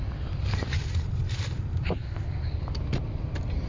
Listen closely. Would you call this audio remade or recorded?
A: recorded